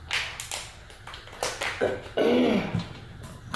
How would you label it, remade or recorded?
recorded